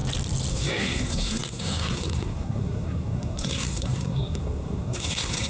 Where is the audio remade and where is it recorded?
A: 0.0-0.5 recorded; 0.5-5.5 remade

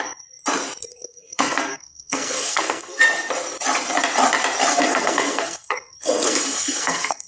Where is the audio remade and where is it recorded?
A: 0.0-0.9 recorded; 0.9-3.0 remade; 3.0-4.7 recorded; 4.7-7.3 remade

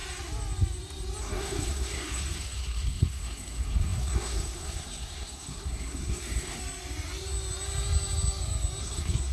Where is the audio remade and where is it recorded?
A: 0.0-1.2 recorded; 1.2-6.6 remade; 6.6-8.8 recorded; 8.8-9.3 remade

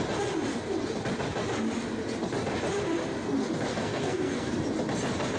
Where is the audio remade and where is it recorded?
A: 0.0-3.7 recorded; 3.7-4.5 remade; 4.5-5.4 recorded

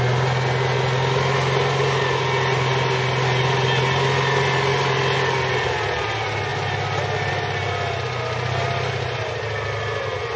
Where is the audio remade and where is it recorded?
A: 0.0-10.4 recorded

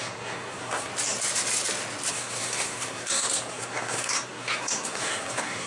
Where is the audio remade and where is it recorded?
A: 0.0-0.9 remade; 0.9-2.1 recorded; 2.1-5.7 remade

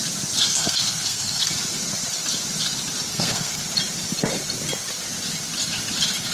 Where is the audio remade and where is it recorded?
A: 0.0-0.5 recorded; 0.5-1.5 remade; 1.5-3.1 recorded; 3.1-3.6 remade; 3.6-6.3 recorded